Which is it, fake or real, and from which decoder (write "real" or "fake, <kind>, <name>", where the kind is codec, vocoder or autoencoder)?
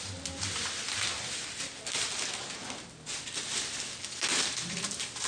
real